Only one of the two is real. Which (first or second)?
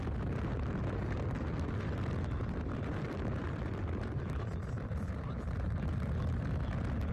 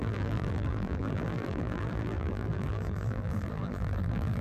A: first